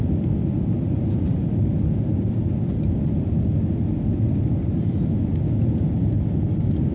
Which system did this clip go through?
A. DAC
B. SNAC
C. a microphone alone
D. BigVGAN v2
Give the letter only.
C